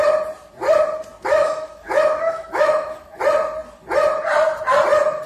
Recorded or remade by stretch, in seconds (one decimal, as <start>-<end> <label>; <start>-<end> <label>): 0.0-1.3 recorded; 1.3-3.2 remade; 3.2-5.3 recorded